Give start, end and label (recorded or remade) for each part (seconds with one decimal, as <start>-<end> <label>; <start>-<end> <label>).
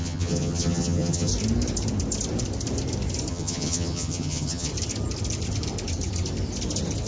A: 0.0-1.3 remade; 1.3-3.3 recorded; 3.3-4.7 remade; 4.7-7.1 recorded